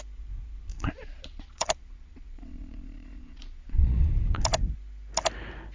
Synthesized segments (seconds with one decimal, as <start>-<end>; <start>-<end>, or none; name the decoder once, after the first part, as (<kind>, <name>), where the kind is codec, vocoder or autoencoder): 0.7-4.1 (vocoder, Vocos)